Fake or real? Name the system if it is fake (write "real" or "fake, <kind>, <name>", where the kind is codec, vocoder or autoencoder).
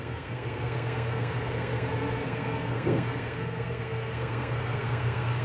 fake, codec, SNAC